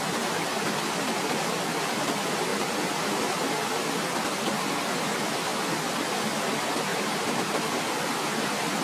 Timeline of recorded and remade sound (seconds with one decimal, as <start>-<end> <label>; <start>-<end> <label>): 0.0-2.5 recorded; 2.5-3.2 remade; 3.2-6.9 recorded; 6.9-8.0 remade; 8.0-8.8 recorded